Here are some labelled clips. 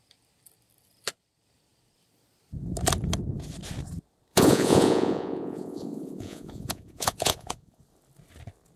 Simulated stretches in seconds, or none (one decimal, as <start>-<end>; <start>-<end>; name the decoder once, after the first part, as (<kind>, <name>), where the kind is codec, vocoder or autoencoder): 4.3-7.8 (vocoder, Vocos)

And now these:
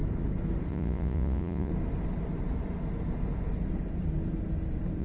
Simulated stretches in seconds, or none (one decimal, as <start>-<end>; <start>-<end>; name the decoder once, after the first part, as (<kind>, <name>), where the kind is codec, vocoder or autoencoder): 0.7-1.7 (vocoder, Vocos)

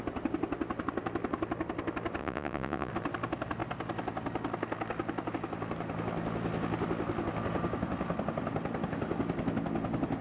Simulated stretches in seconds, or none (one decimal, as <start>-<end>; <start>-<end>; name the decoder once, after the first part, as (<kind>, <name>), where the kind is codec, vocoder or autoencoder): 2.2-2.9 (vocoder, Vocos)

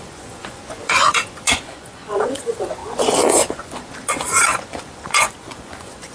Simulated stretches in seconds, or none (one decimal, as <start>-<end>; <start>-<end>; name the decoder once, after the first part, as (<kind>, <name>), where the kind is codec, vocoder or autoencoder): 0.0-6.1 (vocoder, Vocos)

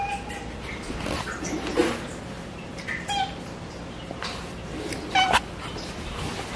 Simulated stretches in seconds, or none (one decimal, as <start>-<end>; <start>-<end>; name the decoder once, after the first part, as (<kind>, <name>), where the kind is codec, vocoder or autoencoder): none